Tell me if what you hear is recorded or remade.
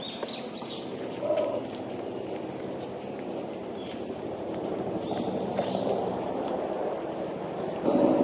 remade